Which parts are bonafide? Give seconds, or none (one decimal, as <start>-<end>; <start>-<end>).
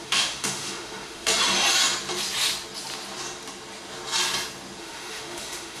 1.3-4.8